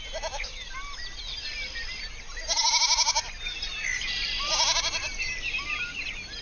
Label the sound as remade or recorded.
recorded